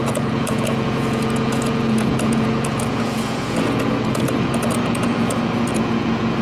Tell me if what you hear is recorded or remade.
remade